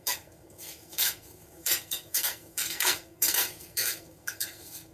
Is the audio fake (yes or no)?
yes